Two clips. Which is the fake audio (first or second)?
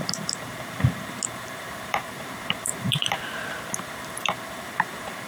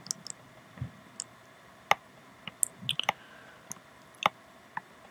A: first